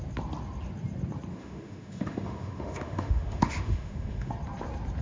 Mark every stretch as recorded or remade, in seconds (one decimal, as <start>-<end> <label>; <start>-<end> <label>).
0.0-1.3 recorded; 1.3-4.3 remade; 4.3-5.0 recorded